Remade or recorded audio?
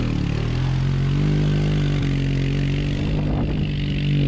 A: recorded